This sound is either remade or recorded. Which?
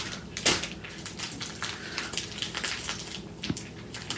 recorded